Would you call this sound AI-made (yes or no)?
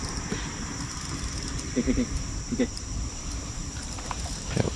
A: yes